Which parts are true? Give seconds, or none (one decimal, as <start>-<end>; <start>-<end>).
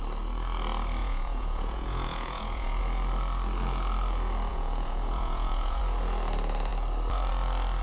0.0-1.0; 2.8-4.5; 5.8-7.8